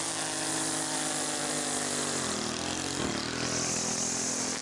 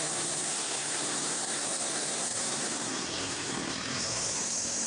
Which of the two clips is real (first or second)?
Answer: first